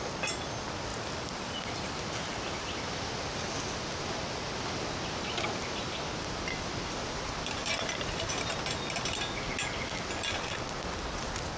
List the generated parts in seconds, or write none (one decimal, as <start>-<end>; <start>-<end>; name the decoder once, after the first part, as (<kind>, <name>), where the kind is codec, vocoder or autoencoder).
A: 0.9-2.0 (vocoder, BigVGAN v2); 7.6-8.3